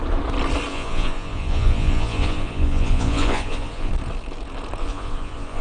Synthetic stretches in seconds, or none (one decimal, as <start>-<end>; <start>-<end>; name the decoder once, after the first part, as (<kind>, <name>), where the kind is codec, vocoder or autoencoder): 0.7-3.9 (vocoder, Vocos); 4.8-5.6